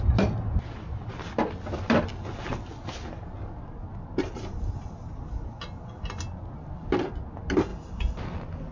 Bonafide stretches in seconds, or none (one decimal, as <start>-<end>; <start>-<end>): 0.0-8.7